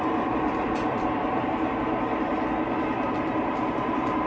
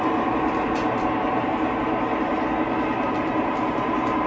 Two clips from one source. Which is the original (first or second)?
second